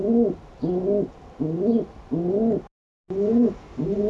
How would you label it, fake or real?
real